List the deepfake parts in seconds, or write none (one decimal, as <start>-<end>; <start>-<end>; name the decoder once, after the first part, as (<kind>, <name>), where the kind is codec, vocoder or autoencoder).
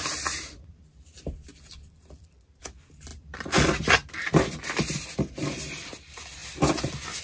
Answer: 0.0-6.4 (vocoder, BigVGAN v2)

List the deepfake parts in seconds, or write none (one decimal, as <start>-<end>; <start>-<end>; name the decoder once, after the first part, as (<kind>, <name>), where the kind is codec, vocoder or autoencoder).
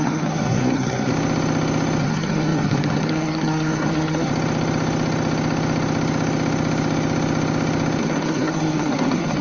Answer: 0.0-1.1 (codec, SNAC); 2.0-4.3; 8.0-9.4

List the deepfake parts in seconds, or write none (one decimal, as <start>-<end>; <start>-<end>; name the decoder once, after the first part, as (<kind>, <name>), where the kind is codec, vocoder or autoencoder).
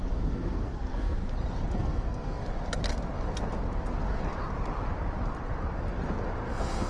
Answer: 0.0-1.2 (codec, SNAC); 1.7-2.4; 6.5-6.9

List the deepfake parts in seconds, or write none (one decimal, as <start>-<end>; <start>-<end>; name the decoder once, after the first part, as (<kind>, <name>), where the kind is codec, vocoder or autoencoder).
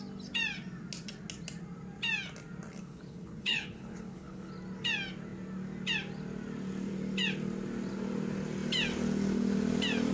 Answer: 2.8-4.5 (codec, HILCodec)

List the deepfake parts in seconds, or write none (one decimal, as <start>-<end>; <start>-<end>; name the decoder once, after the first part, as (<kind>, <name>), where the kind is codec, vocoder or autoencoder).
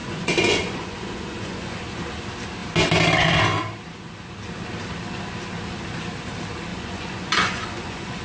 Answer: 0.0-1.8 (vocoder, Vocos); 6.7-8.2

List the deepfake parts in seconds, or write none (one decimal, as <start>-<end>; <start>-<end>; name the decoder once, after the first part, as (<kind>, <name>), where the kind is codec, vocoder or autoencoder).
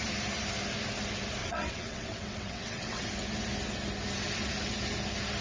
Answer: 1.4-3.0 (vocoder, WaveNeXt)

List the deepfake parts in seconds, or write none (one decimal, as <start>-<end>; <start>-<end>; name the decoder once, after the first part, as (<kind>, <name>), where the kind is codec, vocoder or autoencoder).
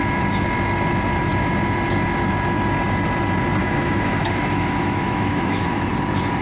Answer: 3.6-5.9 (autoencoder, DAC-VAE)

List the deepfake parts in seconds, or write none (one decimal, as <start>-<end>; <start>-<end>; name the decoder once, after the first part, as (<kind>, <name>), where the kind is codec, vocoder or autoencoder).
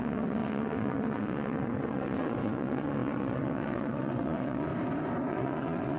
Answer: 0.0-4.7 (vocoder, WaveNeXt); 5.3-6.0